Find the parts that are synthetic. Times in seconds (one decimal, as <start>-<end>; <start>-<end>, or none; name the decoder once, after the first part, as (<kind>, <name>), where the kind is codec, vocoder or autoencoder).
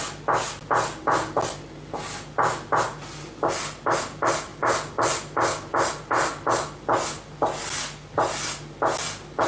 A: none